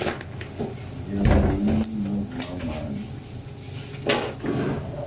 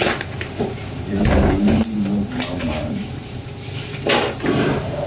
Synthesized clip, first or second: second